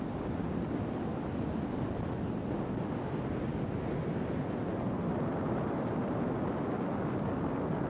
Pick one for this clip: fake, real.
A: real